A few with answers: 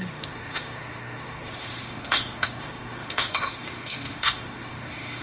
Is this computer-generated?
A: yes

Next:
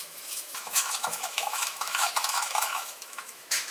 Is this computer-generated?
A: yes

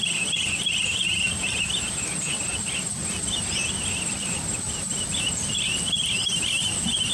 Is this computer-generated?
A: no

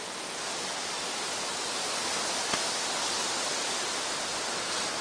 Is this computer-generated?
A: no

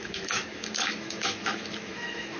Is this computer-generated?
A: yes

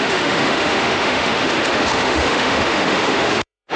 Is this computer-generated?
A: yes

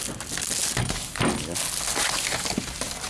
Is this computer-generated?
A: no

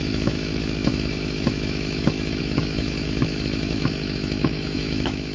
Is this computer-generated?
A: yes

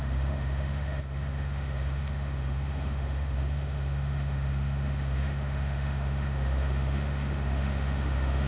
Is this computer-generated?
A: yes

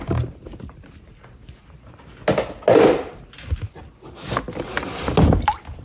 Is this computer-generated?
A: no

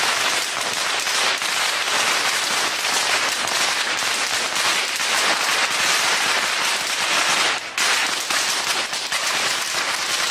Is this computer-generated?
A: no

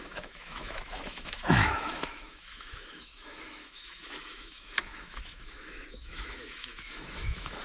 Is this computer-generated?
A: yes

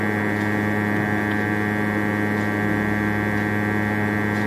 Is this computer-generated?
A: no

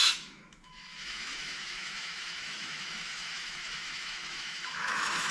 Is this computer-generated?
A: yes